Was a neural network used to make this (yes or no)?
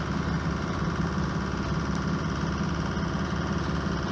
no